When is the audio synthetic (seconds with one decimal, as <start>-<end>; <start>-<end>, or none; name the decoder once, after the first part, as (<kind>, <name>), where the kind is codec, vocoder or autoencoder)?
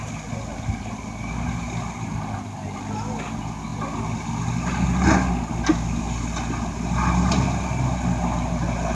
none